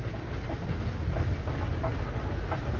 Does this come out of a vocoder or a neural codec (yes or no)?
no